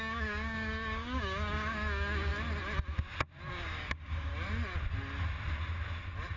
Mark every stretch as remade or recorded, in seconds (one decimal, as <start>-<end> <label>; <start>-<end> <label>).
0.0-2.3 remade; 2.3-3.5 recorded; 3.5-4.3 remade; 4.3-6.4 recorded